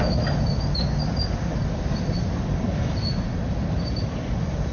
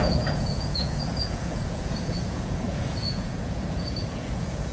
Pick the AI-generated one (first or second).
second